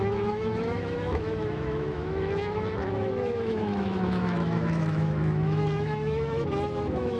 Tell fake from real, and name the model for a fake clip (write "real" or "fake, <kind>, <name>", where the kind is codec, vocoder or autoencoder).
fake, autoencoder, DAC-VAE